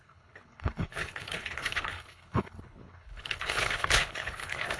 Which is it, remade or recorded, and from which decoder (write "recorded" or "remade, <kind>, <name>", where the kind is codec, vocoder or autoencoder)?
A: remade, codec, HILCodec